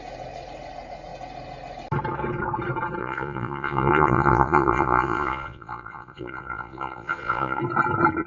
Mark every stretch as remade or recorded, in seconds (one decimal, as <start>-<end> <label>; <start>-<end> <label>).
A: 0.0-3.0 recorded; 3.0-7.6 remade; 7.6-8.3 recorded